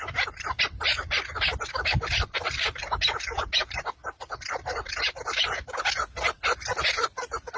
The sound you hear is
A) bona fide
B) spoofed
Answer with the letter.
A